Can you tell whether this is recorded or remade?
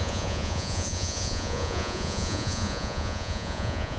remade